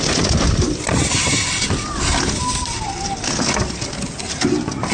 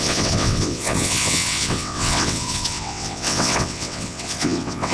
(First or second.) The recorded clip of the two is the first